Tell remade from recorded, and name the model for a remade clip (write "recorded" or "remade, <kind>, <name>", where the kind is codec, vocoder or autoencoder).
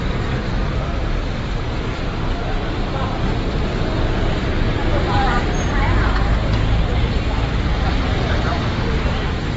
recorded